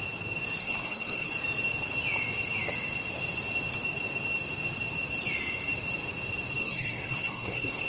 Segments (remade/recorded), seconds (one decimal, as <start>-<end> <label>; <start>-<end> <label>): 0.0-0.6 recorded; 0.6-1.3 remade; 1.3-6.6 recorded; 6.6-7.9 remade